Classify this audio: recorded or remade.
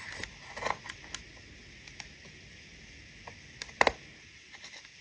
recorded